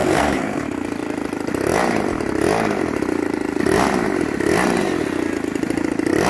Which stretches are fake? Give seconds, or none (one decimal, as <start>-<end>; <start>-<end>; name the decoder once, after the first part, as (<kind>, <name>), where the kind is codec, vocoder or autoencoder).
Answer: 0.0-0.6 (codec, SNAC)